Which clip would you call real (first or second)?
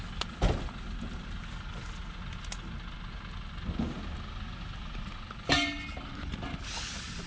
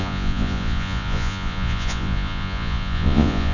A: first